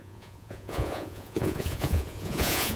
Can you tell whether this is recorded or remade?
remade